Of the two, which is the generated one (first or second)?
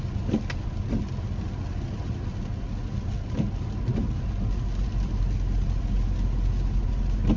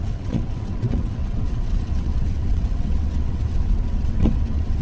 second